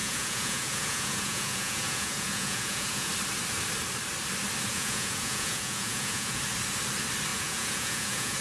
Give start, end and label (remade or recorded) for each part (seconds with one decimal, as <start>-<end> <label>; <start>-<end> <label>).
0.0-3.1 remade; 3.1-4.7 recorded; 4.7-6.4 remade; 6.4-7.3 recorded; 7.3-8.4 remade